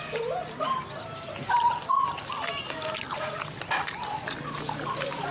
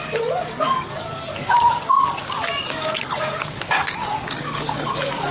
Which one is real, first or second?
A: first